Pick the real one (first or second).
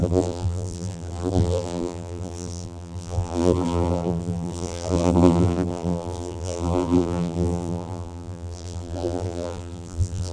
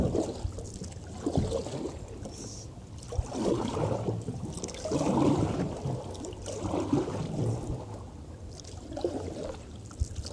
second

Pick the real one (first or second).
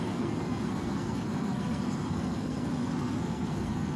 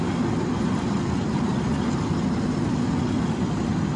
second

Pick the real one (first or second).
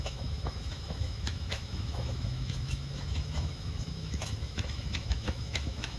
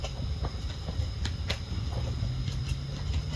second